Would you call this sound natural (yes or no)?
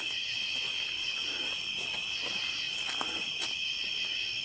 yes